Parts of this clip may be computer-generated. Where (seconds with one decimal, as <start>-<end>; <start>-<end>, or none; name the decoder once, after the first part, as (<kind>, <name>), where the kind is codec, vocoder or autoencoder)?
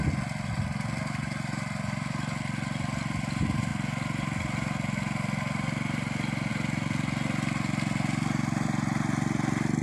none